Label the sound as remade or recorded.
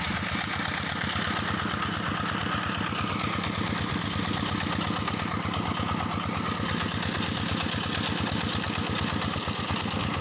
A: recorded